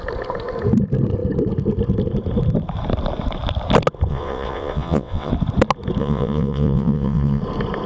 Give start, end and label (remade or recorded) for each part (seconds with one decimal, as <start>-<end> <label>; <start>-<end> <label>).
0.0-4.1 recorded; 4.1-5.3 remade; 5.3-6.0 recorded; 6.0-7.4 remade; 7.4-7.9 recorded